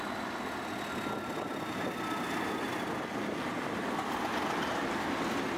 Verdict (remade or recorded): recorded